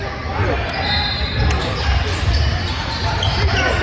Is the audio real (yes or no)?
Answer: yes